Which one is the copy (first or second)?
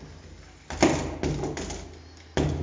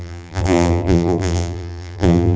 second